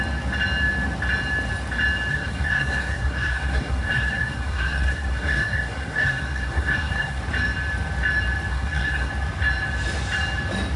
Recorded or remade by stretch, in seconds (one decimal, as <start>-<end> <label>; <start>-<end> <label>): 0.0-2.1 recorded; 2.1-7.2 remade; 7.2-8.5 recorded; 8.5-9.1 remade; 9.1-10.8 recorded